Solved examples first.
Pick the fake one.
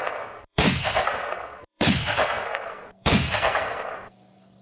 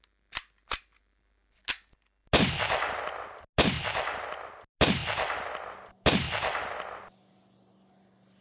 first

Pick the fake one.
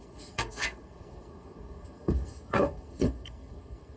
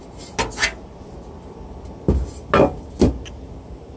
first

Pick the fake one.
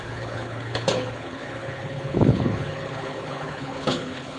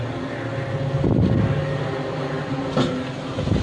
first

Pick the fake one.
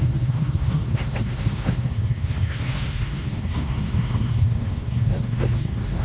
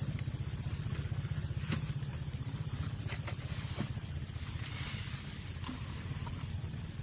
first